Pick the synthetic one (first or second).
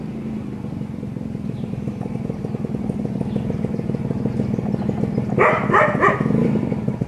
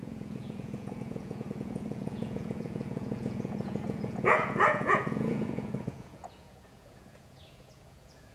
second